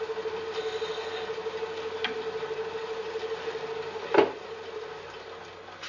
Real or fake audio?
real